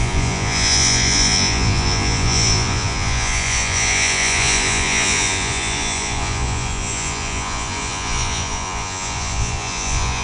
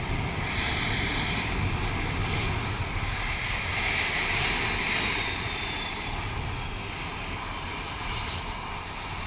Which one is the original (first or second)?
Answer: second